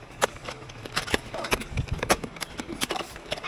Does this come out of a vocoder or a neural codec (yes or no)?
yes